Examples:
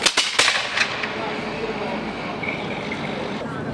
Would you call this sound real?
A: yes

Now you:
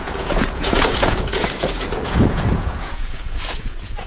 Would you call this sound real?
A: no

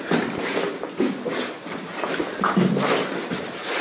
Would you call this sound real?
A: yes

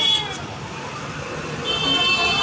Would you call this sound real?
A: yes